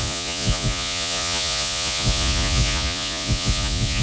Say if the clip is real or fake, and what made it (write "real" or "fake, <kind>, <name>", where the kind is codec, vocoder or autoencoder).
fake, vocoder, Vocos